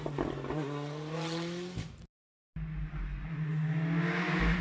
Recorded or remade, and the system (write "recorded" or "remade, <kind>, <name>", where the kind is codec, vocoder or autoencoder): recorded